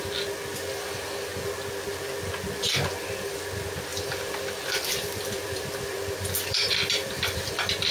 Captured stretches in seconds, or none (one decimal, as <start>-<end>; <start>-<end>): 0.0-3.9; 7.5-7.9